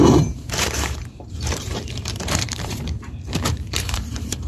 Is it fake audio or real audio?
fake